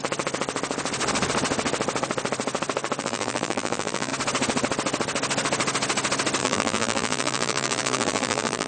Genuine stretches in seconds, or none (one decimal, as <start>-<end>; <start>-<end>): 0.0-3.0; 4.1-6.4